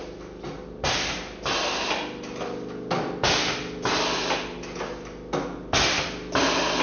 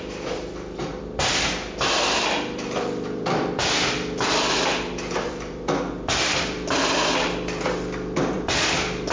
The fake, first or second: second